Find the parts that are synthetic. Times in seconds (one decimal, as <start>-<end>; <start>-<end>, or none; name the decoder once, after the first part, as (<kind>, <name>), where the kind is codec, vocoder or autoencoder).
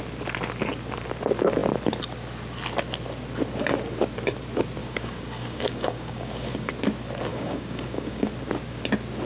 4.8-6.7 (codec, DAC); 7.3-8.3